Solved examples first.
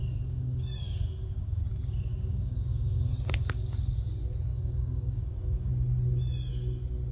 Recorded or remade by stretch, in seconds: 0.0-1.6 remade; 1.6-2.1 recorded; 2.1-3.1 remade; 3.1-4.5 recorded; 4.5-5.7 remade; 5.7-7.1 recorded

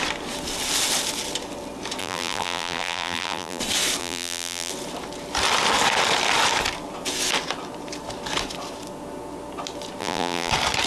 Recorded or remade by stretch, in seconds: 0.0-2.0 recorded; 2.0-3.6 remade; 3.6-4.0 recorded; 4.0-4.7 remade; 4.7-10.0 recorded; 10.0-10.5 remade; 10.5-10.9 recorded

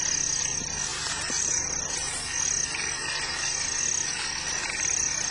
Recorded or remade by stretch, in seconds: 0.0-0.9 recorded; 0.9-2.1 remade; 2.1-5.3 recorded

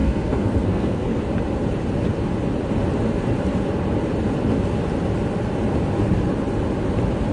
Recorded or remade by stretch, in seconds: 0.0-1.2 remade; 1.2-7.3 recorded

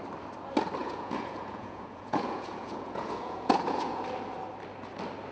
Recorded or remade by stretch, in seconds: 0.0-0.8 recorded; 0.8-4.0 remade; 4.0-5.3 recorded